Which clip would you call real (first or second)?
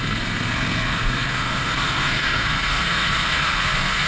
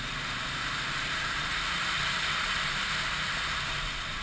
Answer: second